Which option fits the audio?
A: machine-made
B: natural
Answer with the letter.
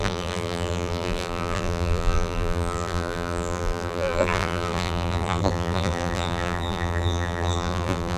A